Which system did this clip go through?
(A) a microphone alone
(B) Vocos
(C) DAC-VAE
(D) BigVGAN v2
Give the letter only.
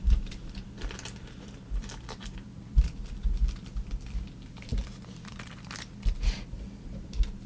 D